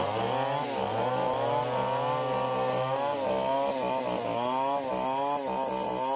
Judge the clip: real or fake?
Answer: real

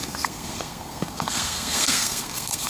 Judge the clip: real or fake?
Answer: fake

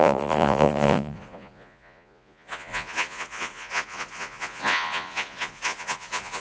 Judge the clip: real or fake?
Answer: fake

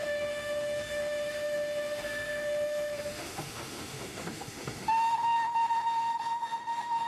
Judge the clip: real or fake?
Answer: fake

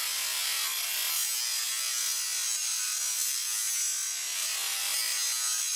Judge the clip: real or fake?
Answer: real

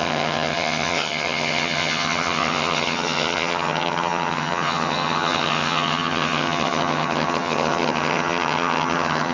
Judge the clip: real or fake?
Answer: fake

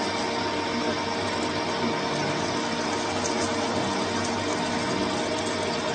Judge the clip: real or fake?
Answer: real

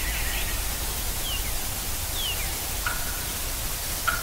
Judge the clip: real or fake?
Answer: real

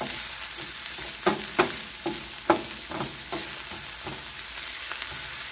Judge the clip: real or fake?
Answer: real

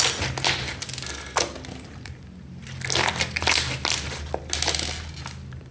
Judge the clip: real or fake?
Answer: real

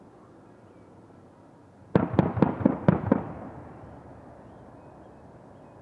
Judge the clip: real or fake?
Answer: real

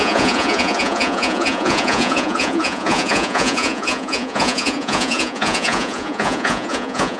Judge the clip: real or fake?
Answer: fake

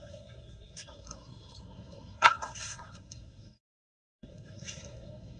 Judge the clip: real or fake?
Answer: fake